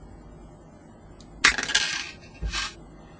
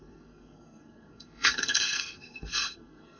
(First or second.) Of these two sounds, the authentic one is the first